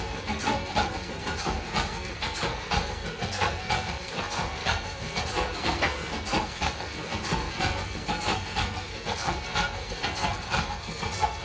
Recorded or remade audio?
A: remade